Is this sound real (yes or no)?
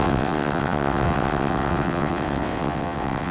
no